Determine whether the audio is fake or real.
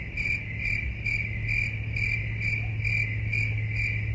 real